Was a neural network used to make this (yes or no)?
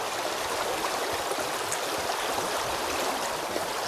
no